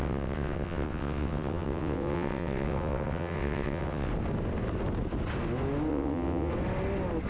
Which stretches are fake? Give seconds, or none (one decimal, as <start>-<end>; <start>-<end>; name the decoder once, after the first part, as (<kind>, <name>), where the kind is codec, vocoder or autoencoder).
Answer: 0.0-4.1 (vocoder, WaveNeXt); 5.9-6.5